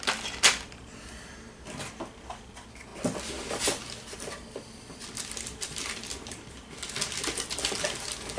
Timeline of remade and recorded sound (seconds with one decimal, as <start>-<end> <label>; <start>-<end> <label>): 0.0-8.4 recorded